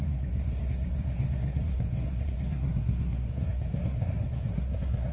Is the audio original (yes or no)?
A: no